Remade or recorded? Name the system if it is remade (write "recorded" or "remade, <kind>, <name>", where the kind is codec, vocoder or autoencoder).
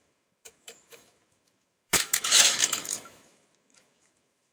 remade, autoencoder, DAC-VAE